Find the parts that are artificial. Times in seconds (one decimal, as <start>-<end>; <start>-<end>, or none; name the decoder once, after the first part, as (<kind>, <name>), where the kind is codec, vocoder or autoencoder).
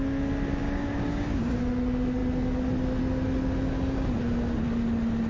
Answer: 0.5-1.6 (codec, DAC)